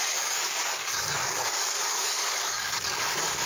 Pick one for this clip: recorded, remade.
remade